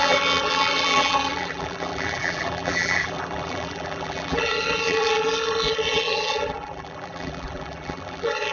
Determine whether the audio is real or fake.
fake